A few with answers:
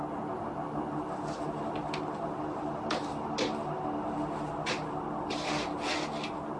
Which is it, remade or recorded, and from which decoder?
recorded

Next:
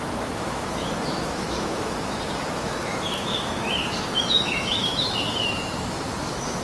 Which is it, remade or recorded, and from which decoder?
remade, autoencoder, DAC-VAE